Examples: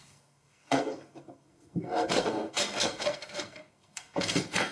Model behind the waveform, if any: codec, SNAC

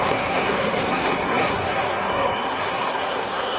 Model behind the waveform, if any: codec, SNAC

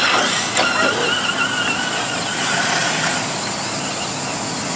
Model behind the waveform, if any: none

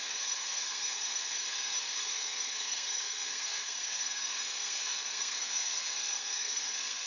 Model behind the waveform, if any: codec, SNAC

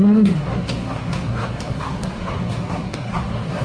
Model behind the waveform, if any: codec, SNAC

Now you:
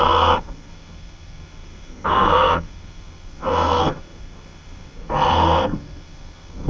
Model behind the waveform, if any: codec, SNAC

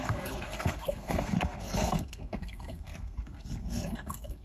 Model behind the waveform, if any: codec, SNAC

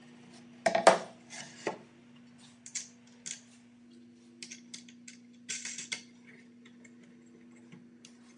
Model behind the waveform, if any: none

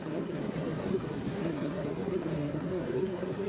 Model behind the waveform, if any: codec, SNAC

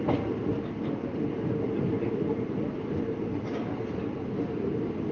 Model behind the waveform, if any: none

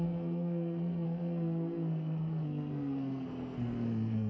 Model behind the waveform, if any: codec, SNAC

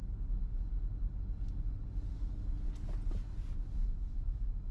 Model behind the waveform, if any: none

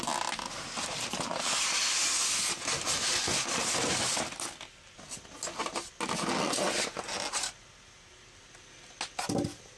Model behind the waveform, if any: none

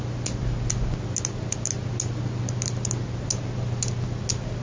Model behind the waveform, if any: none